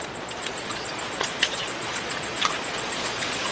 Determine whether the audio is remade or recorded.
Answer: remade